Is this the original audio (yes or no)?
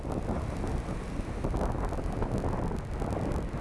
yes